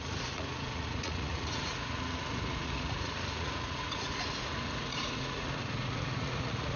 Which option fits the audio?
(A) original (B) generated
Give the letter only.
B